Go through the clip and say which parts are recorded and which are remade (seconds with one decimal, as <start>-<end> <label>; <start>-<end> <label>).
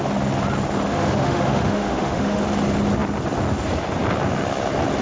0.0-0.9 recorded; 0.9-2.4 remade; 2.4-5.0 recorded